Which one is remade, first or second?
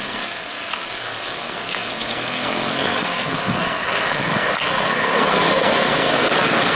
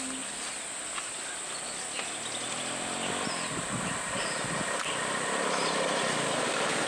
first